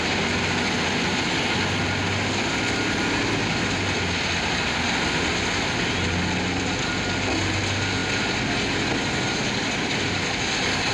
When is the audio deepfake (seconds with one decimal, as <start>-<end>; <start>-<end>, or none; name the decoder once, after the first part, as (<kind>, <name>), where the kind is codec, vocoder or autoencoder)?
none